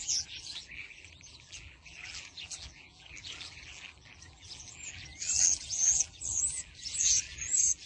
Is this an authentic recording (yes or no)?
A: no